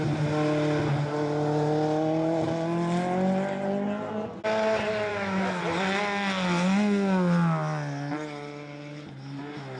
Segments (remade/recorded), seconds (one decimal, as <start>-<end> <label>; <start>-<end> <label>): 0.0-5.1 recorded; 5.1-5.6 remade; 5.6-9.8 recorded